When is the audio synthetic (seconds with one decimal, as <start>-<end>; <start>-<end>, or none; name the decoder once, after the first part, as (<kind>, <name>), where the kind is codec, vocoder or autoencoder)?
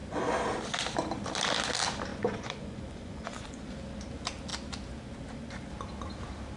2.1-3.7 (vocoder, Vocos)